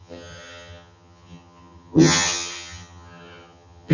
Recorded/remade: remade